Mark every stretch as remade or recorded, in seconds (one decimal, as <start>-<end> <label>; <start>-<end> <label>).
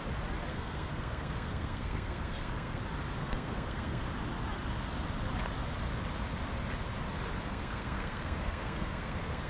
0.0-0.5 recorded; 0.5-2.8 remade; 2.8-3.2 recorded; 3.2-4.0 remade; 4.0-7.5 recorded; 7.5-9.5 remade